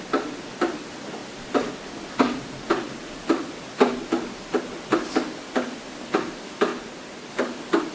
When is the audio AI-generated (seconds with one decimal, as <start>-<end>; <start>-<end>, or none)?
6.7-7.3